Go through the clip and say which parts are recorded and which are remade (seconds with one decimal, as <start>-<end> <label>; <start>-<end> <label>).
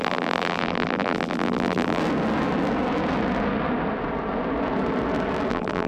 0.0-2.0 remade; 2.0-5.5 recorded; 5.5-5.9 remade